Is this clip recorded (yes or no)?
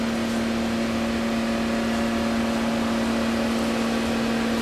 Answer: yes